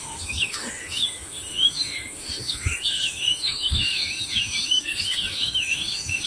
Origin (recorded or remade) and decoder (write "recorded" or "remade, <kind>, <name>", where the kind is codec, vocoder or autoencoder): remade, autoencoder, DAC-VAE